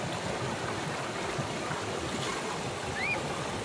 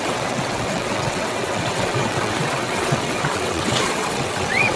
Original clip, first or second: first